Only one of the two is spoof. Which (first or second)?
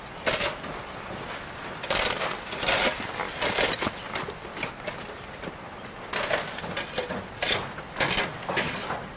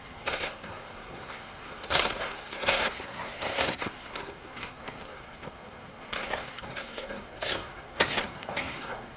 second